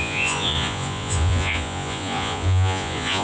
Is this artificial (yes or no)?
yes